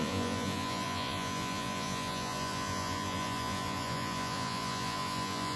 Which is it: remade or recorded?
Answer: remade